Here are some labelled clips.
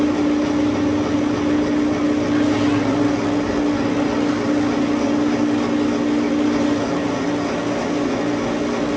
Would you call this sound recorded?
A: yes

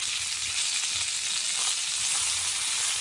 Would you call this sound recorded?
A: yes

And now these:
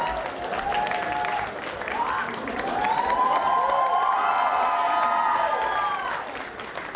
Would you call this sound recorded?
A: yes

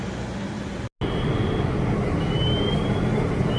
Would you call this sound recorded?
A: yes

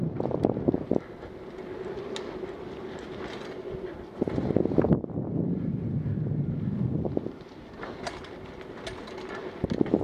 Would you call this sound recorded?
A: yes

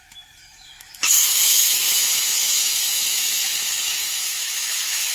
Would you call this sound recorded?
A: no